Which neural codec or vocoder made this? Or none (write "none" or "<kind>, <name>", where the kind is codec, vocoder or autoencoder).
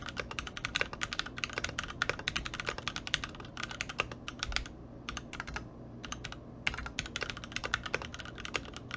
none